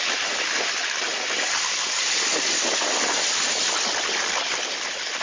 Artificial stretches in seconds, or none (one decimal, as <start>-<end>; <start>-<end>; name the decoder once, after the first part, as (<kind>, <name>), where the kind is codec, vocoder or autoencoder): none